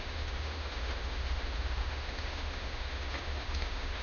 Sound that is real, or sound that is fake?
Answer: fake